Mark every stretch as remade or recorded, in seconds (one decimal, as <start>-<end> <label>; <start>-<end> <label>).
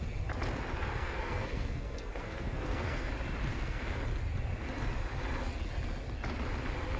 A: 0.0-0.8 recorded; 0.8-3.1 remade; 3.1-3.5 recorded; 3.5-4.0 remade; 4.0-7.0 recorded